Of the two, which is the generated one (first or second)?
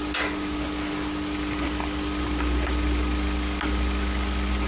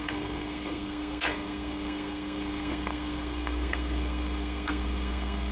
second